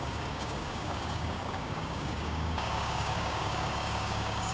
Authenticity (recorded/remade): remade